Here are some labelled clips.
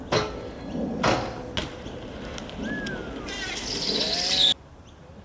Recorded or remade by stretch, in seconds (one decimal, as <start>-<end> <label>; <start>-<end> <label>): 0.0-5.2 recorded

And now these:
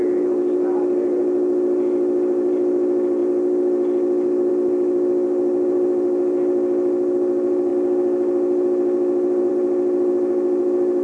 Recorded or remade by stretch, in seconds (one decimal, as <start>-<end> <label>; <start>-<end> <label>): 0.0-11.0 recorded

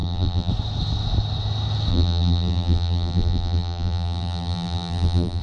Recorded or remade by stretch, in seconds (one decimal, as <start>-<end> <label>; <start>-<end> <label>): 0.0-0.5 remade; 0.5-1.9 recorded; 1.9-5.4 remade

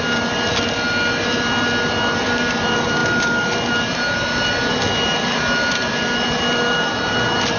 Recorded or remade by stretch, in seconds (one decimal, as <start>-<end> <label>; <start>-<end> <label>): 0.0-7.6 recorded

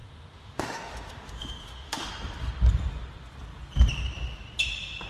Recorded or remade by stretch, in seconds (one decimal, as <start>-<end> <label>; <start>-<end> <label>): 0.0-2.1 remade; 2.1-5.1 recorded